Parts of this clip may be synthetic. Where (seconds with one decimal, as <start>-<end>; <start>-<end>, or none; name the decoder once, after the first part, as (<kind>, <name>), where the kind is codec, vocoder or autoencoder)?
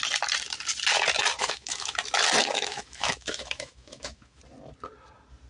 1.4-2.0 (autoencoder, DAC-VAE); 2.4-4.4